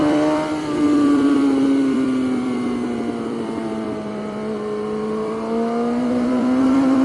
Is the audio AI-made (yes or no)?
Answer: yes